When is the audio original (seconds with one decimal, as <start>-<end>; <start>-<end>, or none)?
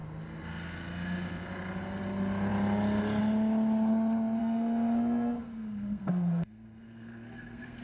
0.0-4.4